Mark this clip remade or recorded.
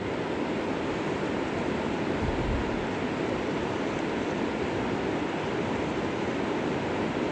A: recorded